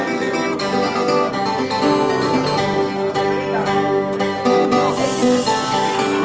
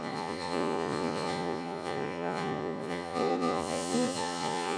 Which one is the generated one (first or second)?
second